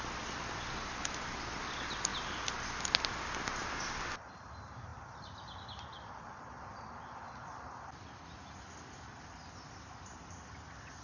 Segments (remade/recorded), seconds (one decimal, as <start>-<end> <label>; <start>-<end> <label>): 0.0-4.9 recorded; 4.9-8.1 remade; 8.1-11.0 recorded